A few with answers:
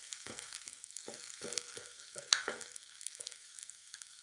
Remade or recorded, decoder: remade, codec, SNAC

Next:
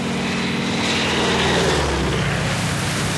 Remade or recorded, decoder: recorded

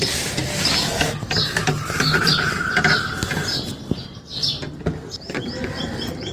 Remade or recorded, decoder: recorded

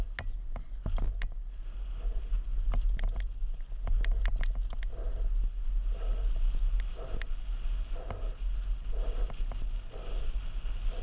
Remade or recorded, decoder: recorded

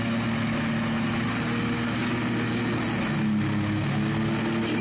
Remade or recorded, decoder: recorded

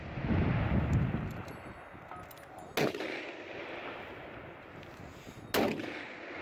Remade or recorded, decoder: recorded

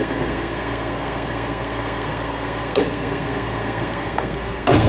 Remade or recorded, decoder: remade, codec, SNAC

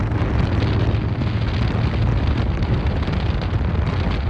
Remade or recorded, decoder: recorded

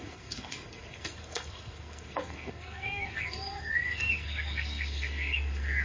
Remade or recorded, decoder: remade, codec, SNAC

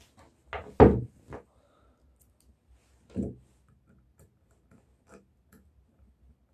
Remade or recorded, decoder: recorded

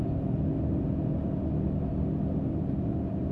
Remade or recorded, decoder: recorded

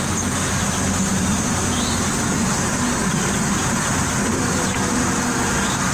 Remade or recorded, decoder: recorded